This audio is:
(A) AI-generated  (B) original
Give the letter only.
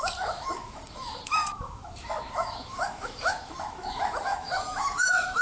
A